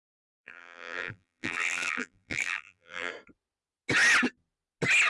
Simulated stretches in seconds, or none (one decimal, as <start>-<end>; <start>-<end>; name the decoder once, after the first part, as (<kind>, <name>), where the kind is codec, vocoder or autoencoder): 0.0-3.1 (vocoder, BigVGAN v2)